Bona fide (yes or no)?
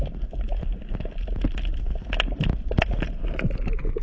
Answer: yes